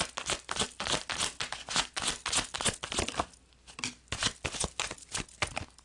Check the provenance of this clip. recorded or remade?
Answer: recorded